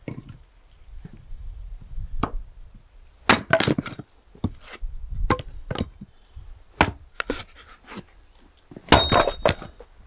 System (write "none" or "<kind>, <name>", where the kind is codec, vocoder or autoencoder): none